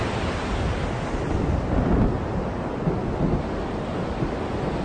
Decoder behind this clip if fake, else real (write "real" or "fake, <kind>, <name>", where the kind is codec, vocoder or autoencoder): real